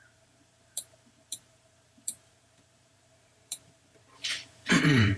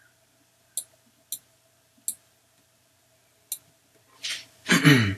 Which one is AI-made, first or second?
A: first